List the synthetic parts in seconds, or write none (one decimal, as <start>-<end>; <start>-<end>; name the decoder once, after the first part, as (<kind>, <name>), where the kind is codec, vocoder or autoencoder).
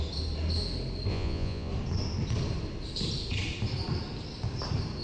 1.1-1.7 (vocoder, Vocos)